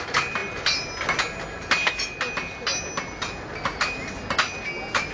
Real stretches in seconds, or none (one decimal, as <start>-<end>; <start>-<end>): 0.0-5.1